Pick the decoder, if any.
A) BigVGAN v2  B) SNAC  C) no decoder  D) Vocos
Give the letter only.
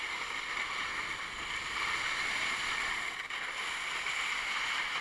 C